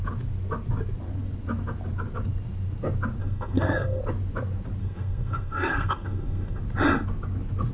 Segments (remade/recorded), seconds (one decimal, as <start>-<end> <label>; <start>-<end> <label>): 0.0-3.2 recorded; 3.2-4.0 remade; 4.0-4.8 recorded; 4.8-6.6 remade; 6.6-7.7 recorded